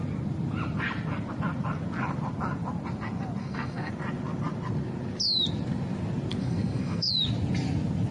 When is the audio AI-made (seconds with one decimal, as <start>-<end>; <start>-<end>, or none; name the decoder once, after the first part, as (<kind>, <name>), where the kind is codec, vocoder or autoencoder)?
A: 3.4-3.9 (codec, SNAC); 6.4-7.1